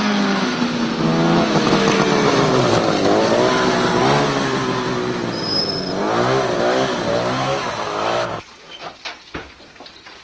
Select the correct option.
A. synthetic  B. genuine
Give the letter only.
B